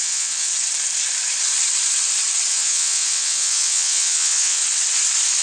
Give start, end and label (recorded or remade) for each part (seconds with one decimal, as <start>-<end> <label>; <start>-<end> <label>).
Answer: 0.0-0.5 remade; 0.5-2.5 recorded; 2.5-4.6 remade; 4.6-5.4 recorded